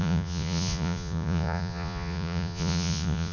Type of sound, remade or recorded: remade